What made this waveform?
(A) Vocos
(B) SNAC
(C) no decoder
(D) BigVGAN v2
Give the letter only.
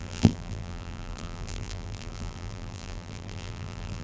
D